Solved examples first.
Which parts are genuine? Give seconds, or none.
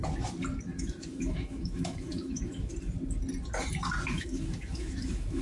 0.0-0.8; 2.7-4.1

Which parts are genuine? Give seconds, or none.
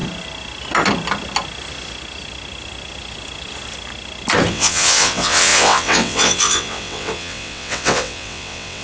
0.0-4.5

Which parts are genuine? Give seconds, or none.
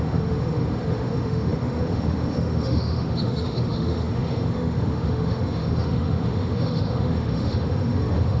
none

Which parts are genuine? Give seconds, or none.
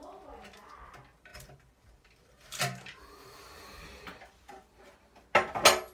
0.0-1.3; 4.8-5.9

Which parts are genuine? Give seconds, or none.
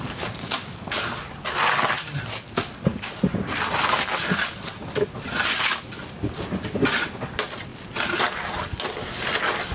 0.0-9.7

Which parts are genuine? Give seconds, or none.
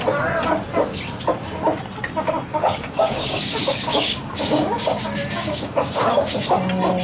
0.0-2.5; 6.4-7.0